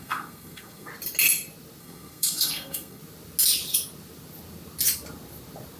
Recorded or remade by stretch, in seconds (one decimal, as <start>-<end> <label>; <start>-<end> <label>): 0.0-0.9 remade; 0.9-1.8 recorded; 1.8-3.0 remade; 3.0-5.8 recorded